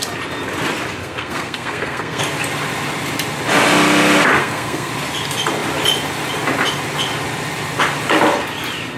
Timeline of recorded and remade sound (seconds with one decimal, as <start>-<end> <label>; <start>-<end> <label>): 0.0-1.0 recorded; 1.0-2.2 remade; 2.2-4.4 recorded; 4.4-4.9 remade; 4.9-9.0 recorded